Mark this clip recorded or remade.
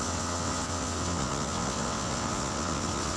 remade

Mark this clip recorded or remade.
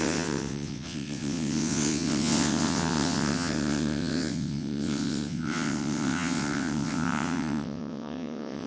remade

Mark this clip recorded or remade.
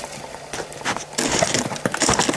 recorded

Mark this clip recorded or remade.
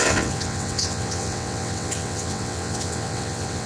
remade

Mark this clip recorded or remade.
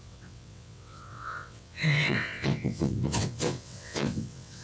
remade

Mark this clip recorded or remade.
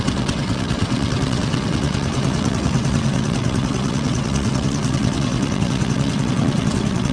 remade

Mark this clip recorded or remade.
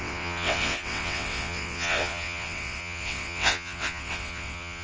remade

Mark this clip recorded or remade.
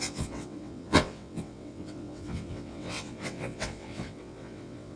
remade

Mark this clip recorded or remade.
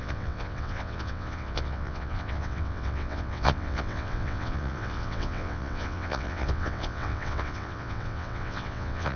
remade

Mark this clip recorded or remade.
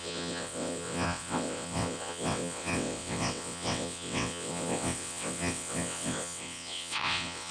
remade